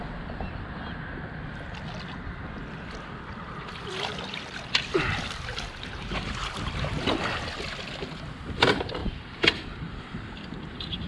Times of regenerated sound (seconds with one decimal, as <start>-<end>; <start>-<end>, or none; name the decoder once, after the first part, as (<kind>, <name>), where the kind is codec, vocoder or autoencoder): 0.0-11.1 (vocoder, BigVGAN v2)